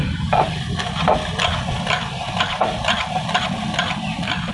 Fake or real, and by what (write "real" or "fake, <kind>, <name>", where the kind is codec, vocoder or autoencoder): real